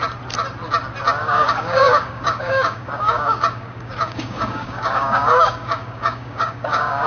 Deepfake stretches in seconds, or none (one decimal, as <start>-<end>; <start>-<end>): 1.2-7.1